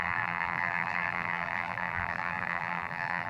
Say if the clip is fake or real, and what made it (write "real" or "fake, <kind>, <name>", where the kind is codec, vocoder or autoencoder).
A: fake, vocoder, BigVGAN v2